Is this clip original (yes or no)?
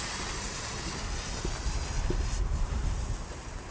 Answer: yes